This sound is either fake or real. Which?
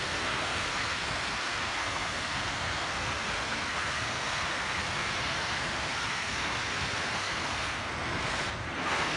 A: fake